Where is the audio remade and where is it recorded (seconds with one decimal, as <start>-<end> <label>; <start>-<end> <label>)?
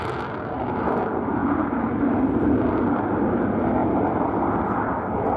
0.0-1.4 recorded; 1.4-2.0 remade; 2.0-3.8 recorded; 3.8-4.4 remade; 4.4-5.4 recorded